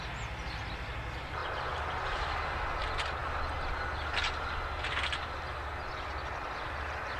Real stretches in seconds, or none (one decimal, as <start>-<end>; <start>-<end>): 0.0-7.2